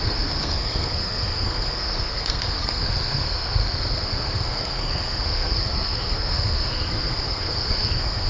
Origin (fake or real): fake